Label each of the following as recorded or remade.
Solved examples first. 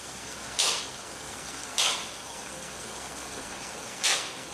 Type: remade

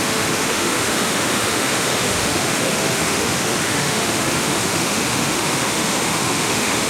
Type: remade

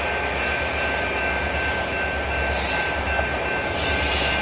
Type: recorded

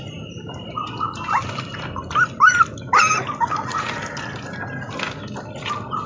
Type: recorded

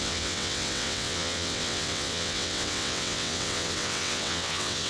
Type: remade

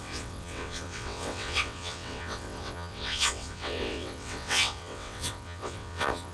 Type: remade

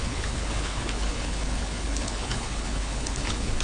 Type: remade